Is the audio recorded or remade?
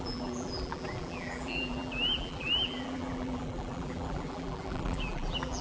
remade